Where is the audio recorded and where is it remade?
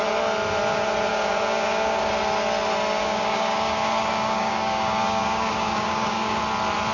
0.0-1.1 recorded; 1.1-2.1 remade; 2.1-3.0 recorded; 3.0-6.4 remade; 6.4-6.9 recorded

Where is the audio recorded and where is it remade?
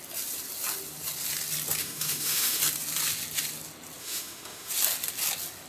0.0-1.8 recorded; 1.8-2.6 remade; 2.6-4.0 recorded; 4.0-4.7 remade; 4.7-5.7 recorded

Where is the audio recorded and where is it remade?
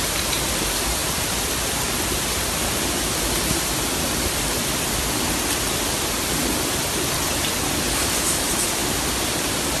0.0-9.8 recorded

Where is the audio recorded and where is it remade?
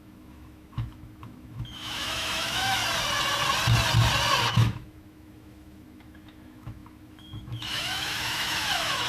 0.0-2.8 remade; 2.8-4.5 recorded; 4.5-9.1 remade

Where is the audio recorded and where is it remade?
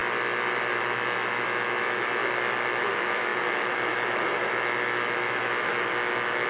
0.0-0.8 recorded; 0.8-2.2 remade; 2.2-2.8 recorded; 2.8-6.5 remade